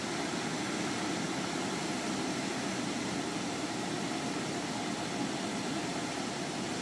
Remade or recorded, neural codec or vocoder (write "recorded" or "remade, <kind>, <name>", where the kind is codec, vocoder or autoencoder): recorded